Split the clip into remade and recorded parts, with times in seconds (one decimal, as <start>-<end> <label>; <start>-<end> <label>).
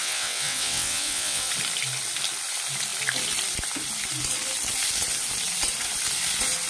0.0-1.5 remade; 1.5-6.7 recorded